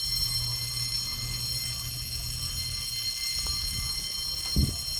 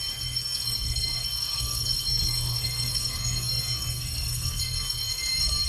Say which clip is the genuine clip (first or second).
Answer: first